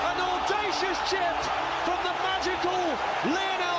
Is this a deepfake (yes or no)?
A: no